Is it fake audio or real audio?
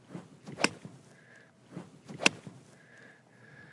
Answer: real